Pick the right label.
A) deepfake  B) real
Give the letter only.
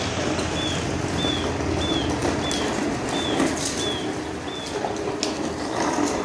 B